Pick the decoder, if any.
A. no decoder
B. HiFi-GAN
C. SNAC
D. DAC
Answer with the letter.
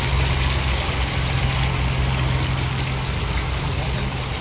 A